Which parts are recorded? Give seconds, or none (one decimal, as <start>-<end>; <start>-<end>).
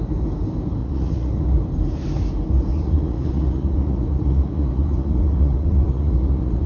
0.0-0.8; 1.4-2.7